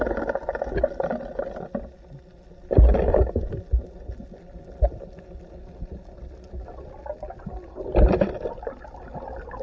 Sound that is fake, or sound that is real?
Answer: real